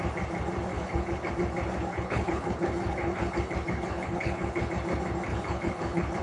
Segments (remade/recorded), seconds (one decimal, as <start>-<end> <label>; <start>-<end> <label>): 0.0-0.7 recorded; 0.7-1.3 remade; 1.3-1.9 recorded; 1.9-4.7 remade; 4.7-5.3 recorded; 5.3-6.2 remade